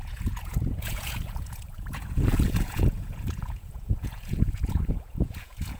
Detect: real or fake fake